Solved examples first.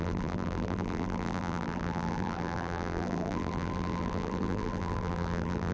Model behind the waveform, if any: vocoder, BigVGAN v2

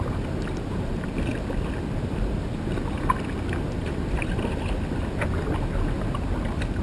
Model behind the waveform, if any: none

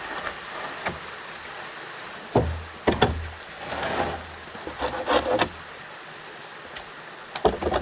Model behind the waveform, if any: none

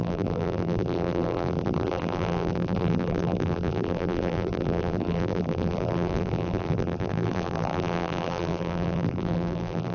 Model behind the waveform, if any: vocoder, BigVGAN v2